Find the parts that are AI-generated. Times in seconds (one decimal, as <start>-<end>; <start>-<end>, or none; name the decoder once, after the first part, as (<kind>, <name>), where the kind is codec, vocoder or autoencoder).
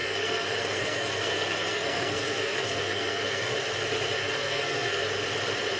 0.0-3.5 (codec, SNAC); 4.2-5.0